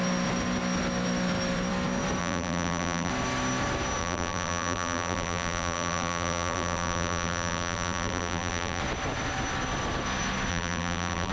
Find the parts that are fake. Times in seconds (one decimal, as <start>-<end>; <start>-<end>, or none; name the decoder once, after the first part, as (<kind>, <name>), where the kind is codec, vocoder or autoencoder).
2.2-3.1 (vocoder, BigVGAN v2); 4.0-8.8; 10.5-11.3